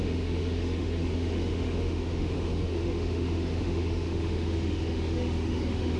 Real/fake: fake